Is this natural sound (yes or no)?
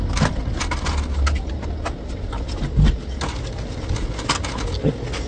yes